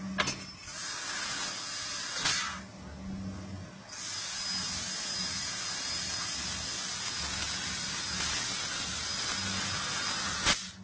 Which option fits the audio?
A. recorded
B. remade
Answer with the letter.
A